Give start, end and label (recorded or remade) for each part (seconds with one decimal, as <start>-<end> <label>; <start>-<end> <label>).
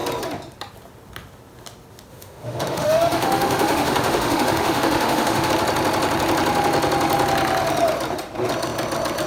0.0-2.1 recorded; 2.1-5.5 remade; 5.5-9.3 recorded